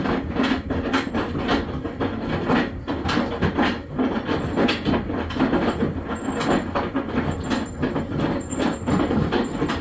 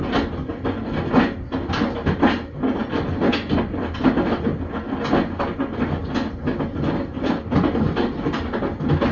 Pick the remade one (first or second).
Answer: first